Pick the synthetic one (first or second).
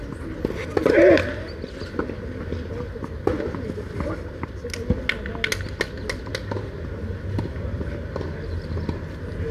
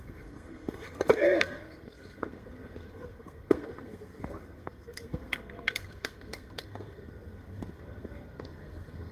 second